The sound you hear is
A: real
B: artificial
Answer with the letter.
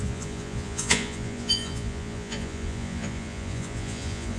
B